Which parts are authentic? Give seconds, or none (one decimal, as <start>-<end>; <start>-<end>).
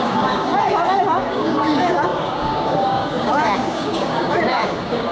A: 0.5-1.0